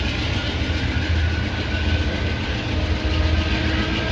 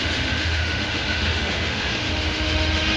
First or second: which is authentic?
first